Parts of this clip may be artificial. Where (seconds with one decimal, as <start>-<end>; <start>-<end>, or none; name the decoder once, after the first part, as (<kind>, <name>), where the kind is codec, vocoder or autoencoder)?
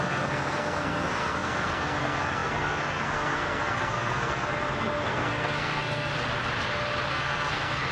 0.0-6.1 (codec, SNAC); 7.1-7.9